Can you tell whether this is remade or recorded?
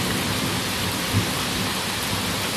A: recorded